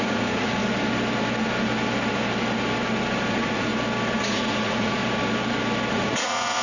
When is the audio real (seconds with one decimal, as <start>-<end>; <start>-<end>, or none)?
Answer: 0.6-3.3; 3.7-4.2; 5.0-5.9